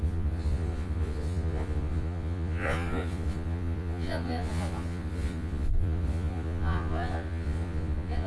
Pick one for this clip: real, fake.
fake